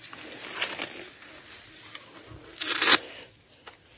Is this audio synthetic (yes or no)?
no